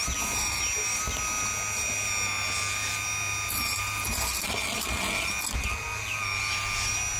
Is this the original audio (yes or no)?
yes